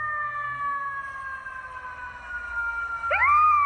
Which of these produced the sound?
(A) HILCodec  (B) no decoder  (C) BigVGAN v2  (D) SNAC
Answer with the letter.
B